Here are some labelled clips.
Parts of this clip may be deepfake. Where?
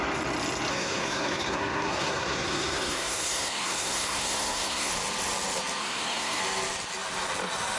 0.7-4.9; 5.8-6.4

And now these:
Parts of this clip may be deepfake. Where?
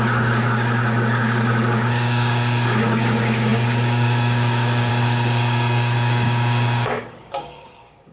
0.0-8.1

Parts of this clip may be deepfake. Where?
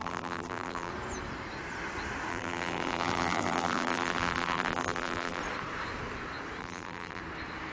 0.0-0.9; 2.3-5.4; 6.6-7.2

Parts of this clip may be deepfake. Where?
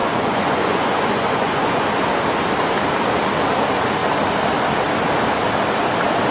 0.0-1.8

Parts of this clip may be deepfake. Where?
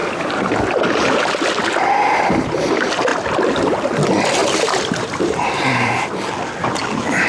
4.4-6.1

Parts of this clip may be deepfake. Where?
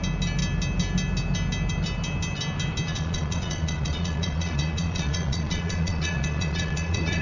2.9-7.2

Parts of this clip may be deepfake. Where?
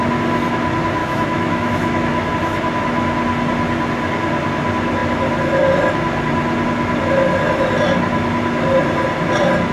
1.0-2.3